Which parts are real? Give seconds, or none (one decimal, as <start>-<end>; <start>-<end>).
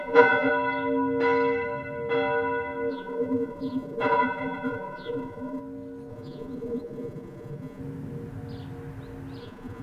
0.5-2.9; 5.6-6.1; 7.8-9.4